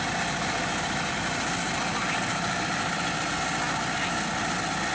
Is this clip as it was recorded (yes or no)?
yes